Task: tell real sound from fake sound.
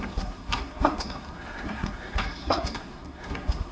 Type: fake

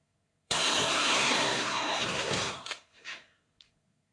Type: fake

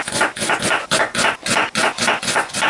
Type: fake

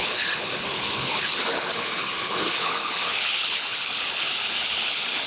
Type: fake